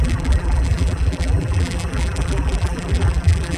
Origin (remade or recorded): remade